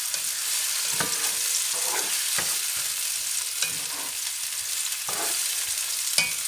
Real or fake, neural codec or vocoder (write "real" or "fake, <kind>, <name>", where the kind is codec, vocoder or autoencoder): real